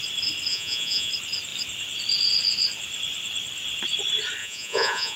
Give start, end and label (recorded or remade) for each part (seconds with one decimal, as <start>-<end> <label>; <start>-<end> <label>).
0.0-0.5 recorded; 0.5-1.1 remade; 1.1-4.4 recorded; 4.4-5.2 remade